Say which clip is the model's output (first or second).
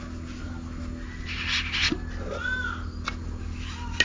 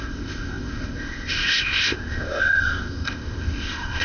second